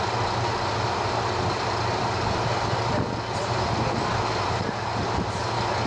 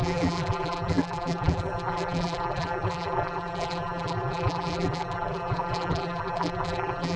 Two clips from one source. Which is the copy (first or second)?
second